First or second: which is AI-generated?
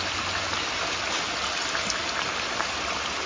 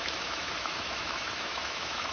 second